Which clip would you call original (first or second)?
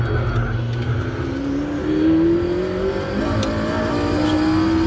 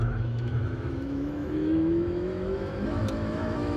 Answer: first